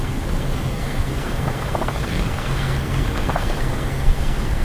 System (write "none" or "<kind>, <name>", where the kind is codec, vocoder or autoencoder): codec, SNAC